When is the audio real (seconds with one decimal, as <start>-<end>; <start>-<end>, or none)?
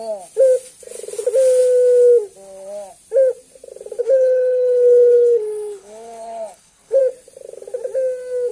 0.0-4.0; 7.0-8.5